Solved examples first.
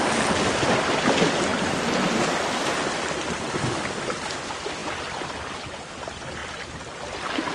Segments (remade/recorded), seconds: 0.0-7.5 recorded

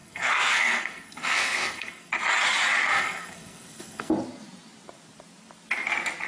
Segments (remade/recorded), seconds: 0.0-2.1 remade; 2.1-2.9 recorded; 2.9-4.1 remade; 4.1-6.3 recorded

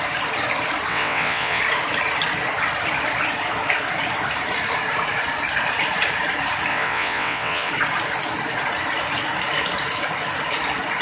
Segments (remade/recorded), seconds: 0.0-0.9 recorded; 0.9-1.6 remade; 1.6-6.7 recorded; 6.7-7.7 remade; 7.7-11.0 recorded